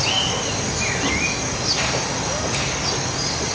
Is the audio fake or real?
real